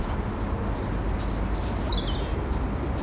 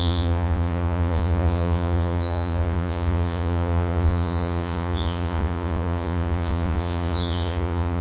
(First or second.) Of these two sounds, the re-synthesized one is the second